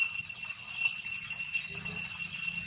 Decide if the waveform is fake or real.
real